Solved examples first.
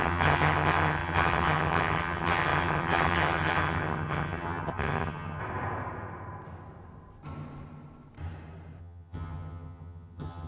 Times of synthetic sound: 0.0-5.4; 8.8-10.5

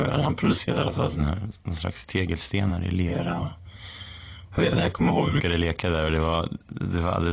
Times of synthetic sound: 0.0-1.2; 3.1-5.4

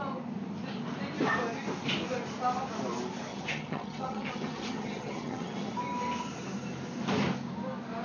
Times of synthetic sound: 3.3-5.8

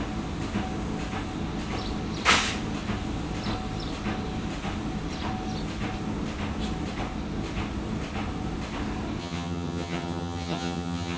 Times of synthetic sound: 9.2-11.2

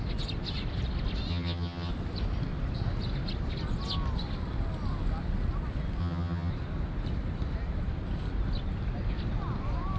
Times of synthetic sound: 1.3-1.9; 6.0-6.5

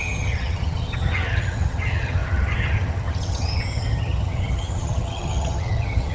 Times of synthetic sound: 0.0-6.1

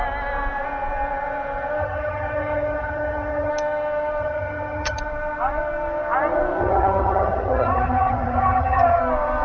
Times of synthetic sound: 1.8-3.5; 4.2-5.0; 6.6-9.0